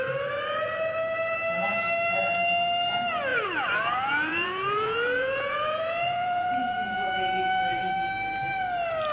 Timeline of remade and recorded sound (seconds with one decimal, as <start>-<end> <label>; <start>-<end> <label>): 0.0-3.3 recorded; 3.3-7.9 remade; 7.9-9.1 recorded